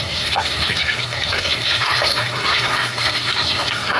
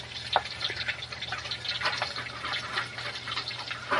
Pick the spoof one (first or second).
first